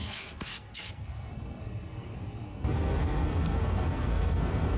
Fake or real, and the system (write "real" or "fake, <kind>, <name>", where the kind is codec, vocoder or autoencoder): fake, codec, SNAC